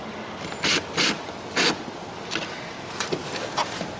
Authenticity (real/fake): real